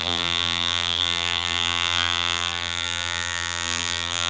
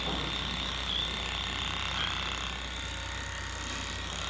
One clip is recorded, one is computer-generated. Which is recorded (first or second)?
second